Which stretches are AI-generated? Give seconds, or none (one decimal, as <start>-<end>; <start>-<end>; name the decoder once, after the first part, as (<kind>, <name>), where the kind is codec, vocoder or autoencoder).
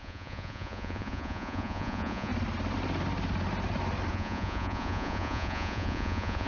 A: 0.0-2.3 (vocoder, Vocos); 4.1-6.5